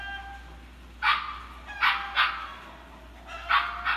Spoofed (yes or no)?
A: no